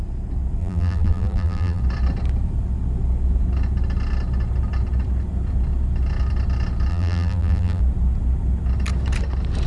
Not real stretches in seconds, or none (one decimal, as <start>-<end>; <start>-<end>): 0.6-1.8; 6.9-7.8